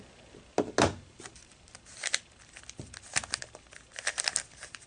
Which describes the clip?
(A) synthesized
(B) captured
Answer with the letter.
B